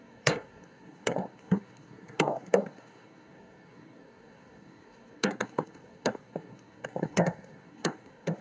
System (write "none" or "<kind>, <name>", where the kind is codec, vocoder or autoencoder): codec, SNAC